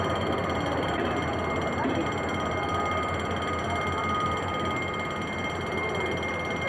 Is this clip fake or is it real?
real